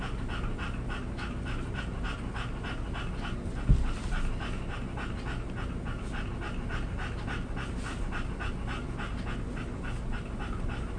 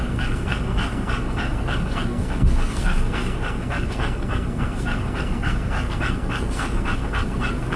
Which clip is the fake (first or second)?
second